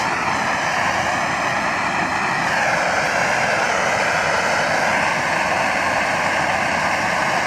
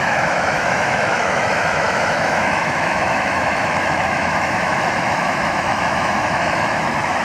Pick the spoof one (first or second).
second